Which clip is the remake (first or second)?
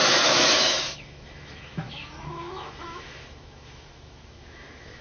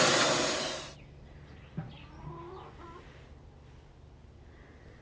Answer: first